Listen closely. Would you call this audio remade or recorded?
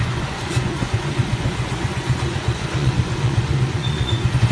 remade